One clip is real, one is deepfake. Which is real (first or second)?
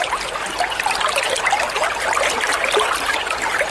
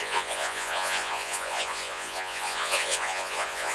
first